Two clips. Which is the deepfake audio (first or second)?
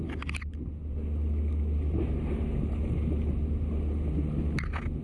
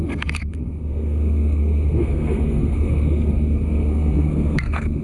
second